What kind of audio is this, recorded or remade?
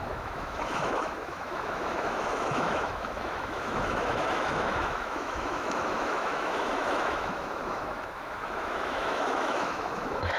remade